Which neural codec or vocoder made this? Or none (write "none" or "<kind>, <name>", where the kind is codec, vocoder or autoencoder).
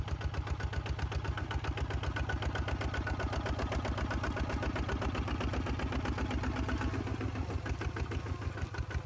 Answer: none